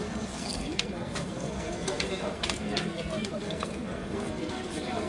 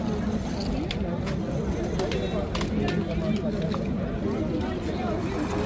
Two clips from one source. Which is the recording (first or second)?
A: second